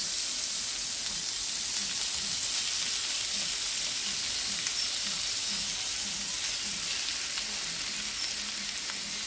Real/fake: real